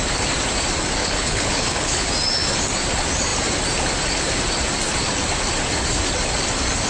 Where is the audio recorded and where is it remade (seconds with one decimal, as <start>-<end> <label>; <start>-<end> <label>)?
0.0-1.0 recorded; 1.0-2.1 remade; 2.1-6.9 recorded